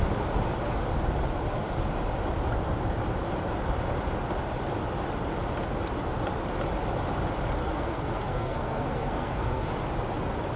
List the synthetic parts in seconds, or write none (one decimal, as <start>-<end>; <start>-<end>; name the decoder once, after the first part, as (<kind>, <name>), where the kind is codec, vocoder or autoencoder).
7.6-9.7 (codec, SNAC)